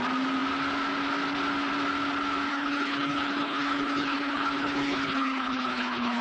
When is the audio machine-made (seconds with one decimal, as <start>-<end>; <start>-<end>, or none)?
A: 2.5-6.2